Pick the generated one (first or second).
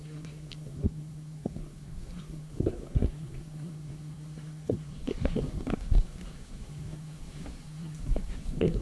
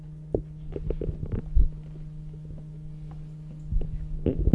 first